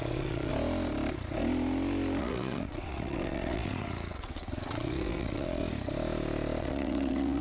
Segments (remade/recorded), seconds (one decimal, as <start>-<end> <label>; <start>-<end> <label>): 0.0-0.5 remade; 0.5-2.2 recorded; 2.2-5.6 remade; 5.6-6.6 recorded; 6.6-7.4 remade